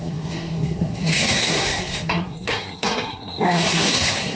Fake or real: fake